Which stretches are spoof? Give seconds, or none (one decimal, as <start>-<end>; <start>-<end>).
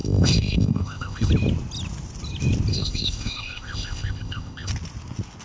0.0-1.3; 2.7-4.7